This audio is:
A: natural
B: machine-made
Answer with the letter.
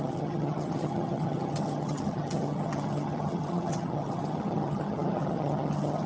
B